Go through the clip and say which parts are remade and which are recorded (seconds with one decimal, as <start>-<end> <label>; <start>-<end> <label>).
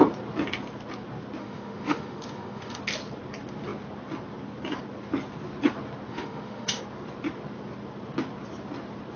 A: 0.0-1.4 recorded; 1.4-2.8 remade; 2.8-6.1 recorded; 6.1-6.8 remade; 6.8-9.2 recorded